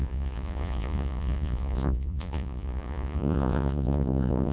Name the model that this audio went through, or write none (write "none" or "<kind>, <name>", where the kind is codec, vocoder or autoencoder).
vocoder, Vocos